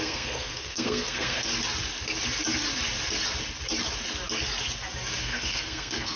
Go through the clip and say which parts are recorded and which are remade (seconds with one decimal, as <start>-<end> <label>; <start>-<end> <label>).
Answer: 0.0-1.5 remade; 1.5-5.2 recorded; 5.2-6.2 remade